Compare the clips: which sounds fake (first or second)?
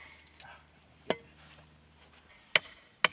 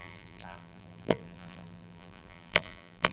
second